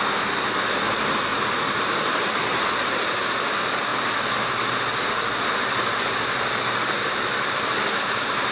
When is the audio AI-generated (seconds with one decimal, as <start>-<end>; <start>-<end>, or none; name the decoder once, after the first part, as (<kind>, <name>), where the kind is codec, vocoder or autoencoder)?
1.3-2.3 (vocoder, BigVGAN v2)